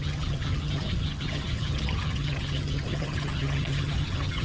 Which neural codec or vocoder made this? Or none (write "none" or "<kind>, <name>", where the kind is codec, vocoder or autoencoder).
vocoder, HiFi-GAN